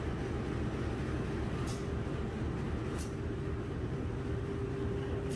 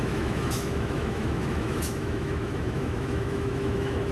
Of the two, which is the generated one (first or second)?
second